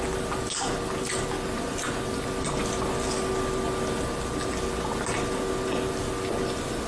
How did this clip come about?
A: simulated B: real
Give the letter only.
B